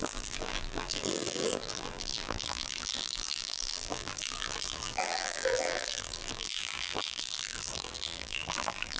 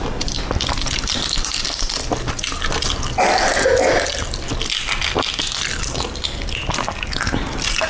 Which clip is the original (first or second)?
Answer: second